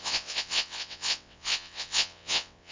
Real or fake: fake